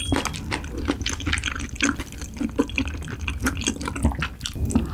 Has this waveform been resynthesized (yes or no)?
no